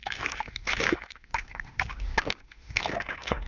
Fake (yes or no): yes